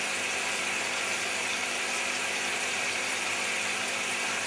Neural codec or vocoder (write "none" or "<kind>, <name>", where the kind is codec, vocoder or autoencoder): vocoder, BigVGAN v2